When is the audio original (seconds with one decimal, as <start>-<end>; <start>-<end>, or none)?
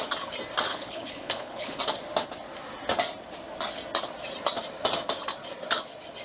0.0-0.7; 1.8-6.2